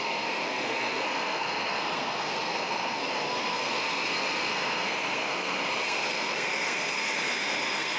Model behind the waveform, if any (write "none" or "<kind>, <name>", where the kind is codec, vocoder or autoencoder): codec, SNAC